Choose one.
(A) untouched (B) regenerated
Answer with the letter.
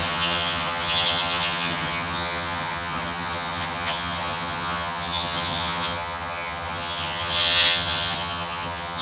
B